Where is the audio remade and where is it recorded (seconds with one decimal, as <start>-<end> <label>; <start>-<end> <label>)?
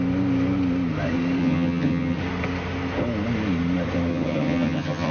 0.0-1.4 recorded; 1.4-2.2 remade; 2.2-4.1 recorded; 4.1-5.1 remade